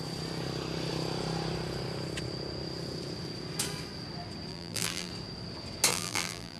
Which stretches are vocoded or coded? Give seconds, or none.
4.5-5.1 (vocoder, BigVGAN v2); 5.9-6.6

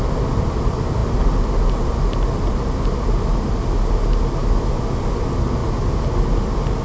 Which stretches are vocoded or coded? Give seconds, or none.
none

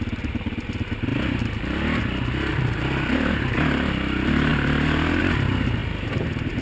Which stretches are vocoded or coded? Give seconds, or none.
2.5-3.3 (vocoder, BigVGAN v2); 4.5-5.2